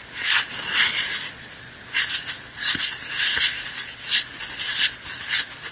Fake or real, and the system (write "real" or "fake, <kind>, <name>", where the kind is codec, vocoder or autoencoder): real